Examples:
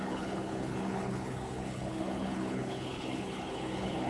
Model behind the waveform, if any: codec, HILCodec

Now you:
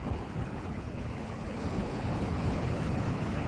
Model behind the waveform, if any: codec, HILCodec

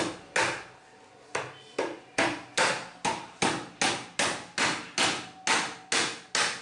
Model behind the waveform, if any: none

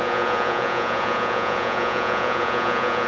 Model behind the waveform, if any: vocoder, Vocos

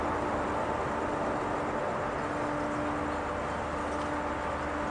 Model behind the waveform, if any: none